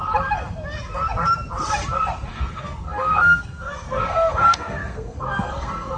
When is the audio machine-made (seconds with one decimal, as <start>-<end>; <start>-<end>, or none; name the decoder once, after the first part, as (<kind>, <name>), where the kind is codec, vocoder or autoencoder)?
2.3-6.0 (codec, SNAC)